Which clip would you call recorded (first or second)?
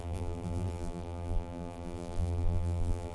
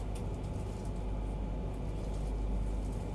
second